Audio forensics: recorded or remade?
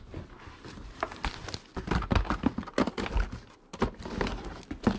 recorded